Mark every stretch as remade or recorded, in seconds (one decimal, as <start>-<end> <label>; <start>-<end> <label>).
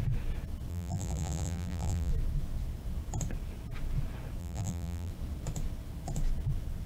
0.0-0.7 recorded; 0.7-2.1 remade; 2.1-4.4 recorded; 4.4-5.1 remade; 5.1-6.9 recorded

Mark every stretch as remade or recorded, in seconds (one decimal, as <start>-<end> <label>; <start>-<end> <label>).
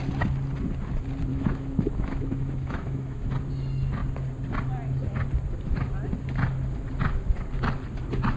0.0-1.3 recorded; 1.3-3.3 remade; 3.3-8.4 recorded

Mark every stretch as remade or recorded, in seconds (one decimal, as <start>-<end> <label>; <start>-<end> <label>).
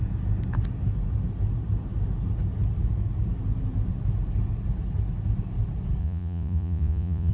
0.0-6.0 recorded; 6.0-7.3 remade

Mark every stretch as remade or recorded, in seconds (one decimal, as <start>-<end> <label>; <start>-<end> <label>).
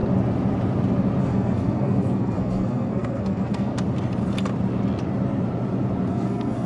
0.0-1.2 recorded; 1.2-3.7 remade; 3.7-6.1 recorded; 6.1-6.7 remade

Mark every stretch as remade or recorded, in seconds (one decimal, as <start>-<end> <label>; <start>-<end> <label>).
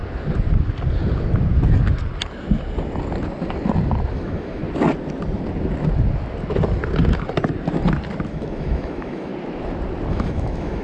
0.0-4.1 recorded; 4.1-4.6 remade; 4.6-8.3 recorded; 8.3-9.3 remade; 9.3-10.1 recorded; 10.1-10.8 remade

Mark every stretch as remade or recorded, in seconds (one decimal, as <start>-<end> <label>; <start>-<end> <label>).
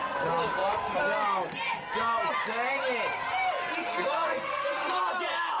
0.0-3.9 recorded; 3.9-5.0 remade; 5.0-5.6 recorded